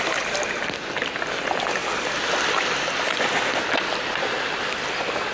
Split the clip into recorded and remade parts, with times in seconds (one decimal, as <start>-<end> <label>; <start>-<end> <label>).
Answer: 0.0-5.3 recorded